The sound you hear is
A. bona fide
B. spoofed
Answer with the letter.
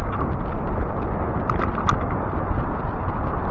A